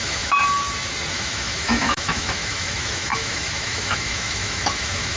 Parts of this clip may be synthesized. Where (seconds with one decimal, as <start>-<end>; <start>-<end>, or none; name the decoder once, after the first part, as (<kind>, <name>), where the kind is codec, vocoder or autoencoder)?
0.0-0.4 (autoencoder, DAC-VAE); 1.1-5.2